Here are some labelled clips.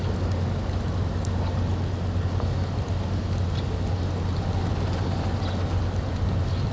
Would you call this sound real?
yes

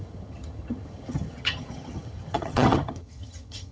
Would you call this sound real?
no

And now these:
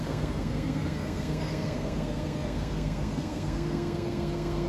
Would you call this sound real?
no